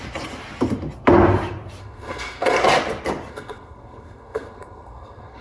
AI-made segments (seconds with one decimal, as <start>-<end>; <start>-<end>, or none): 1.8-2.6; 3.3-5.4